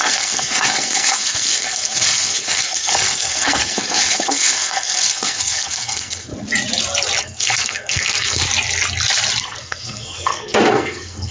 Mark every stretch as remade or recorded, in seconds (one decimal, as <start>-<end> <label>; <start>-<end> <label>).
0.0-6.3 remade; 6.3-7.2 recorded; 7.2-8.4 remade; 8.4-9.4 recorded; 9.4-11.3 remade